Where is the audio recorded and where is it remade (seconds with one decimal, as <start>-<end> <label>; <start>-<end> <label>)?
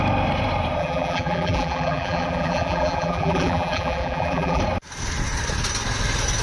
0.0-0.8 recorded; 0.8-4.6 remade; 4.6-6.4 recorded